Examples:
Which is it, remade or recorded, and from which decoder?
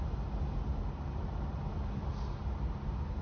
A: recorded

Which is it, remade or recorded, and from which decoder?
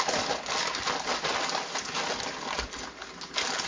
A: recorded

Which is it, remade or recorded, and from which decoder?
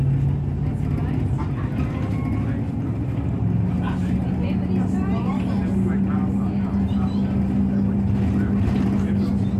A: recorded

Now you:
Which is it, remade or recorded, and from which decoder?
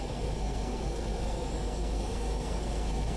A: remade, codec, SNAC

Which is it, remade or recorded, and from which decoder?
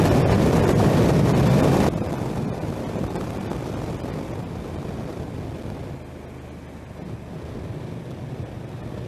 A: recorded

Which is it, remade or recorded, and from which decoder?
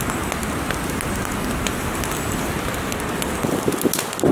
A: recorded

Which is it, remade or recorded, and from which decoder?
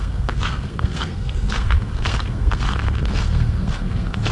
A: remade, codec, SNAC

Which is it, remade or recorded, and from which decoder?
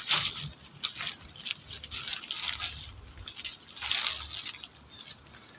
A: recorded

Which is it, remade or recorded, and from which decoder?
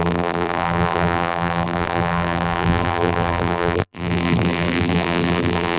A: remade, vocoder, BigVGAN v2